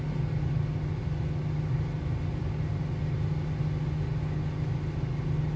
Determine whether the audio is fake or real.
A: real